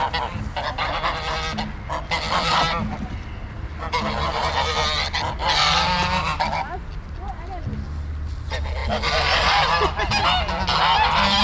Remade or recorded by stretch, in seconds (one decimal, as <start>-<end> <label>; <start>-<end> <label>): 0.0-11.4 recorded

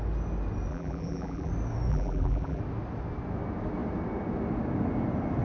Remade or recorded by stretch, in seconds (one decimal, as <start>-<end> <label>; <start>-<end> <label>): 0.0-0.7 recorded; 0.7-1.5 remade; 1.5-1.9 recorded; 1.9-2.6 remade; 2.6-5.4 recorded

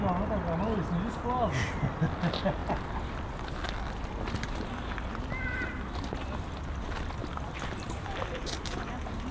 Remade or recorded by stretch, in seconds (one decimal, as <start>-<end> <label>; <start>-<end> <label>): 0.0-7.2 recorded; 7.2-9.3 remade

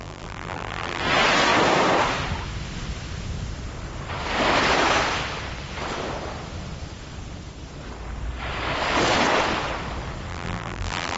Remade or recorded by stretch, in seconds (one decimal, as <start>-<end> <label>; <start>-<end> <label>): 0.0-1.0 remade; 1.0-10.3 recorded; 10.3-11.2 remade

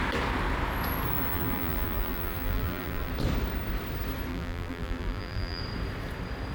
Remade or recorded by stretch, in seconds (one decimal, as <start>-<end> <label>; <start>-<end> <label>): 0.0-1.3 recorded; 1.3-3.1 remade; 3.1-4.3 recorded; 4.3-5.6 remade; 5.6-6.5 recorded

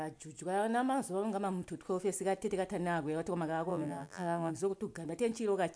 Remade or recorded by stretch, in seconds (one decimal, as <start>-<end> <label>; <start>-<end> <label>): 0.0-3.7 recorded; 3.7-4.5 remade; 4.5-5.8 recorded